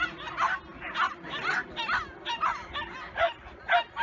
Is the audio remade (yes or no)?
no